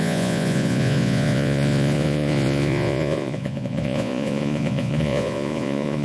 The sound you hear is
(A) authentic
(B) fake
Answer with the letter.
B